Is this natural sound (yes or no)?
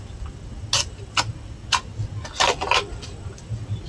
yes